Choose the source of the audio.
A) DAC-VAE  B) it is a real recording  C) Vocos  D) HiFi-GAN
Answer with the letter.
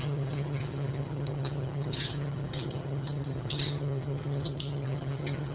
D